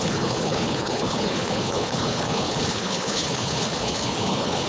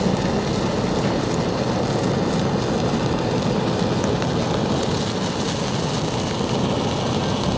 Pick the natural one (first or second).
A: second